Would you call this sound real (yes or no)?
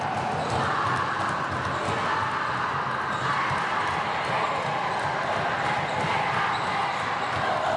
yes